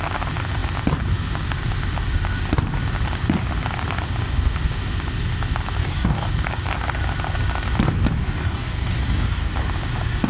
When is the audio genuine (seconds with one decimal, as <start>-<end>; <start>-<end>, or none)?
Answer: 0.0-5.8; 6.3-8.2; 9.5-10.3

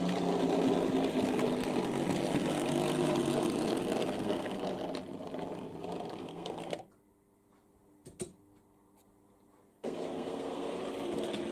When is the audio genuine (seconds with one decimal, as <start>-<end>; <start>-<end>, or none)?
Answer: 0.0-4.0; 4.6-6.2; 6.8-9.7; 10.8-11.5

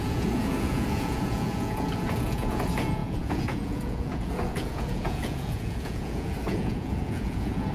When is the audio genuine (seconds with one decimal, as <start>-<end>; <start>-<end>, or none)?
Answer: none

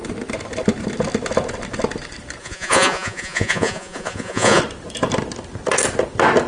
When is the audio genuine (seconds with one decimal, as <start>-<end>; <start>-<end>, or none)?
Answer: 0.0-2.4; 4.6-6.5